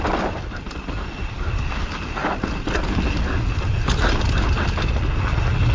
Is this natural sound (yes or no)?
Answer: yes